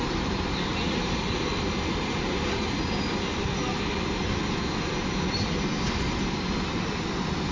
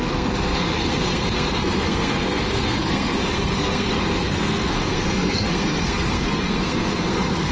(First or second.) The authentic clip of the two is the first